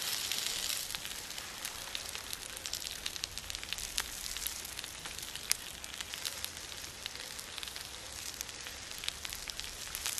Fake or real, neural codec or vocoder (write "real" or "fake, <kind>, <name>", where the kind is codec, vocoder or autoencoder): fake, vocoder, BigVGAN v2